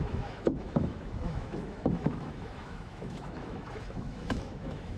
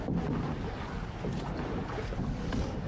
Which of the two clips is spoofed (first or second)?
first